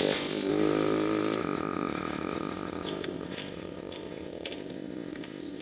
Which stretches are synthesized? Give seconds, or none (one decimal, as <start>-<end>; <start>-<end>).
0.0-0.5; 1.4-5.6